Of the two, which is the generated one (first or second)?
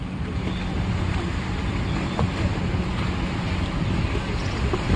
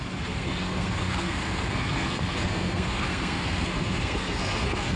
second